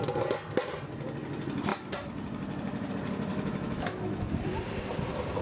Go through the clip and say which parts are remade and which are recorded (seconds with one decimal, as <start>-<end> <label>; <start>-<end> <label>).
0.0-3.3 recorded; 3.3-4.3 remade; 4.3-5.4 recorded